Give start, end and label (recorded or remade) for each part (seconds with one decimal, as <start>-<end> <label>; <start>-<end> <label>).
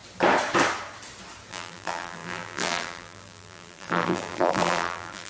0.0-1.5 recorded; 1.5-5.3 remade